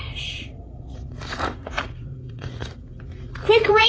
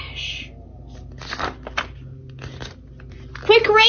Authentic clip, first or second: second